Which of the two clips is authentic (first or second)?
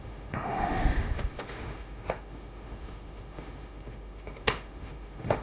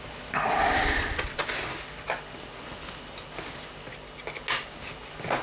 second